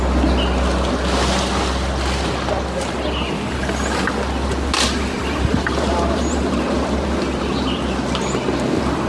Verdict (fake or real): real